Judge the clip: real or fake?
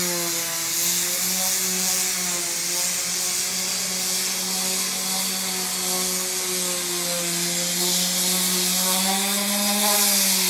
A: real